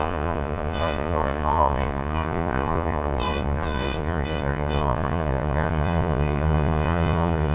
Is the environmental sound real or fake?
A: fake